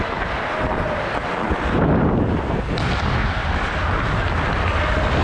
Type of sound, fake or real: real